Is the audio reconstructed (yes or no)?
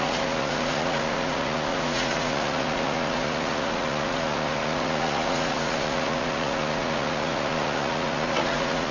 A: yes